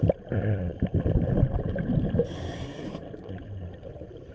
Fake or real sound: real